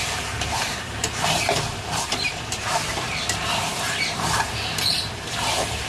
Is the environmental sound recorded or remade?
remade